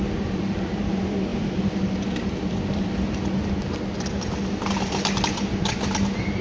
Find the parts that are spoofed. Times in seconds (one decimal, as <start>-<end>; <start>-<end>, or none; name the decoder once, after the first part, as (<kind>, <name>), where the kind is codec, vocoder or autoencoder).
none